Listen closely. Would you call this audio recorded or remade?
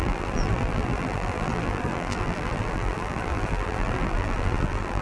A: remade